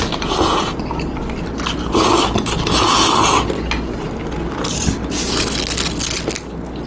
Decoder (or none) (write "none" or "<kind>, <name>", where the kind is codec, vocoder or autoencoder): none